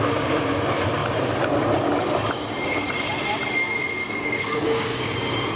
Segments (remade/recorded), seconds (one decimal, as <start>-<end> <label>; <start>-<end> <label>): 0.0-4.0 recorded; 4.0-5.6 remade